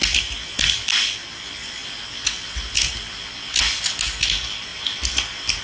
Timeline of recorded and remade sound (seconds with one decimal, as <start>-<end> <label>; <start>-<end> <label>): 0.0-5.6 recorded